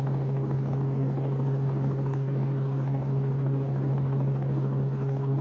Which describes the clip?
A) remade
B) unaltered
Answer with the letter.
A